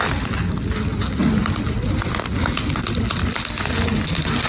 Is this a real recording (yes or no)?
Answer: yes